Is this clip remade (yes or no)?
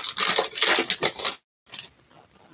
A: no